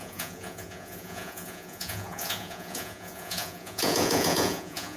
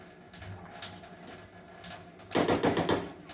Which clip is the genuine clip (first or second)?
second